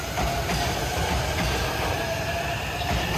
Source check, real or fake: real